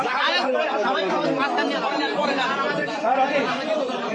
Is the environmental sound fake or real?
real